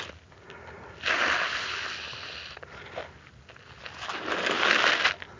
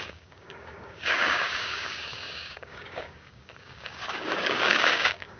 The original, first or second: first